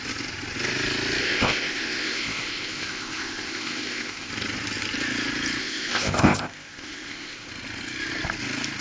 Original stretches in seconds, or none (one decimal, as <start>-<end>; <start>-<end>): 0.0-1.2; 4.3-5.6; 7.5-8.8